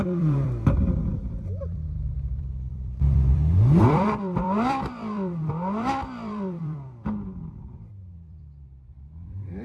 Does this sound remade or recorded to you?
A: remade